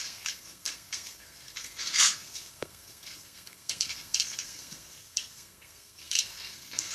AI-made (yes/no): yes